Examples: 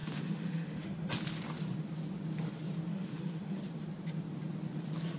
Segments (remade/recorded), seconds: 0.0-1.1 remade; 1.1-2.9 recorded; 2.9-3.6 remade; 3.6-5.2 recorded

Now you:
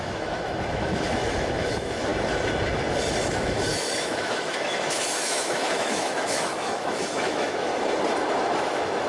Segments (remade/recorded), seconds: 0.0-2.1 remade; 2.1-3.2 recorded; 3.2-7.7 remade; 7.7-8.4 recorded; 8.4-9.1 remade

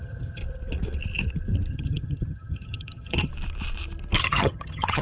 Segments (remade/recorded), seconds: 0.0-0.4 remade; 0.4-1.7 recorded; 1.7-3.3 remade; 3.3-4.2 recorded; 4.2-5.0 remade

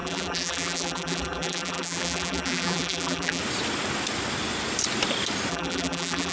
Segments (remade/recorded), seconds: 0.0-3.4 remade; 3.4-5.5 recorded; 5.5-6.3 remade